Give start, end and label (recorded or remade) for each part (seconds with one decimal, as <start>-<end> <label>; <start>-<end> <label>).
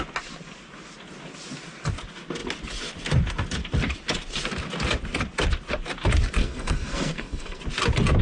0.0-6.4 recorded; 6.4-7.6 remade; 7.6-8.2 recorded